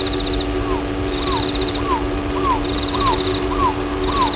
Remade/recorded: recorded